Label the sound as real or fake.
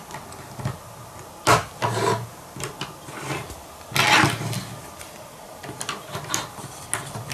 real